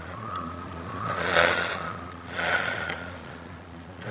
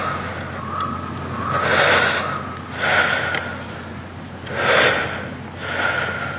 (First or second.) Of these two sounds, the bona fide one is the second